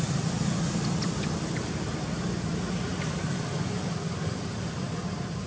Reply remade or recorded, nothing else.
recorded